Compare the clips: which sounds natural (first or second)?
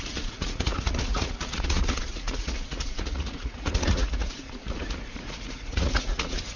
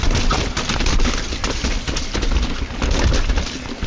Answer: second